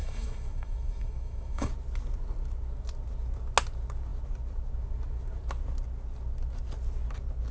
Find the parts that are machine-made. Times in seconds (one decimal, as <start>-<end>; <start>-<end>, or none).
0.0-1.7